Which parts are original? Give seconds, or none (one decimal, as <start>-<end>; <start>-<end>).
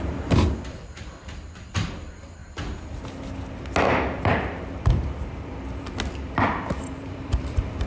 2.4-4.2